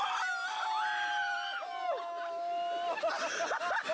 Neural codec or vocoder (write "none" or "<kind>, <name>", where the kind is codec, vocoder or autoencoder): none